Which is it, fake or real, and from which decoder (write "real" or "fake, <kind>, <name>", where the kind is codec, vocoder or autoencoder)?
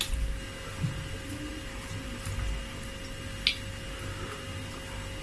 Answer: real